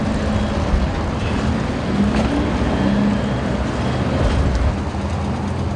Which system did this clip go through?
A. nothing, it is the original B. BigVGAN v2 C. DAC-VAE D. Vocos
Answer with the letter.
A